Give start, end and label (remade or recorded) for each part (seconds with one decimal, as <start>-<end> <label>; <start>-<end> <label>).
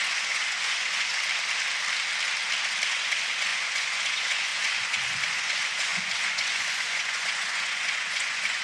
0.0-1.1 remade; 1.1-2.9 recorded; 2.9-8.6 remade